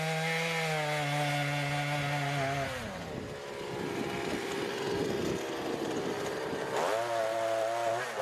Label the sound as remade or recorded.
recorded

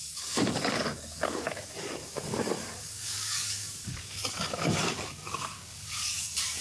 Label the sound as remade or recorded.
remade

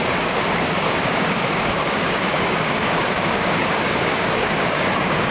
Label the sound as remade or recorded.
remade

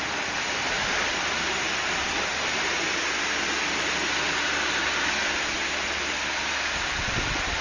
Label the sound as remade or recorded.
recorded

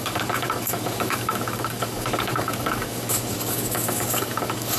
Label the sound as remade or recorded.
remade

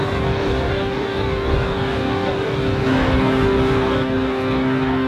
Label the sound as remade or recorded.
remade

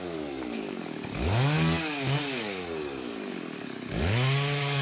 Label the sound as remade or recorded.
remade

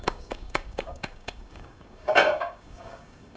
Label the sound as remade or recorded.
remade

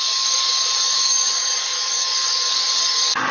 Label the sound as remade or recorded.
remade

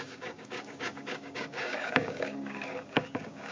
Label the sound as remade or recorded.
remade